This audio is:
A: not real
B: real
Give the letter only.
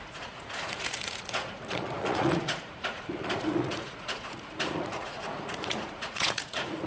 A